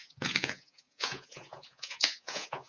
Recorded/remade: remade